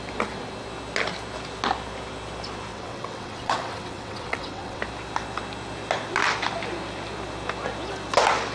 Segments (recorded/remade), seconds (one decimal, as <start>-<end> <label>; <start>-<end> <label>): 0.0-2.7 recorded; 2.7-4.8 remade; 4.8-8.5 recorded